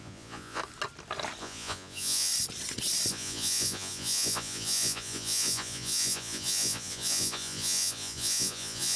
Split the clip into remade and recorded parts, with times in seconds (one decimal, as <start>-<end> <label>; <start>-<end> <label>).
0.0-0.6 remade; 0.6-1.4 recorded; 1.4-2.3 remade; 2.3-3.1 recorded; 3.1-9.0 remade

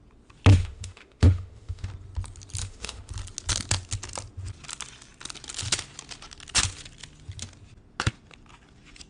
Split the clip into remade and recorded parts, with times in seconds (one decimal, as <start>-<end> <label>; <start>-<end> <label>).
0.0-0.5 recorded; 0.5-1.9 remade; 1.9-2.6 recorded; 2.6-3.1 remade; 3.1-9.1 recorded

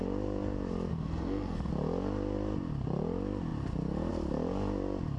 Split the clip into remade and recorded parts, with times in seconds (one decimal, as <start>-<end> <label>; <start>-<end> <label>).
0.0-0.9 recorded; 0.9-1.7 remade; 1.7-5.2 recorded

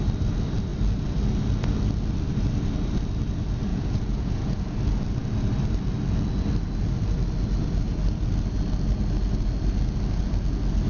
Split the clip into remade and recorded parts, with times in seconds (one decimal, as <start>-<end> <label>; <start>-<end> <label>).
0.0-3.7 recorded; 3.7-4.8 remade; 4.8-10.9 recorded